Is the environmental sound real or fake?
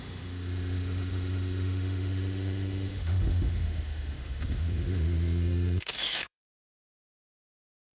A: fake